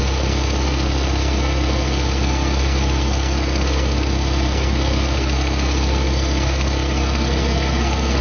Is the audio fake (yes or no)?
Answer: yes